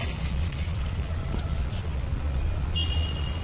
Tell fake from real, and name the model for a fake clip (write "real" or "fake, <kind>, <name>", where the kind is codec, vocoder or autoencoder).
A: fake, vocoder, Vocos